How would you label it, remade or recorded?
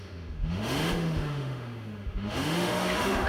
remade